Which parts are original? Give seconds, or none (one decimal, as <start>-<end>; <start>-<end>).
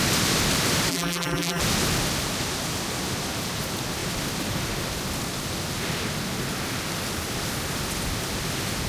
0.0-0.9; 1.6-8.9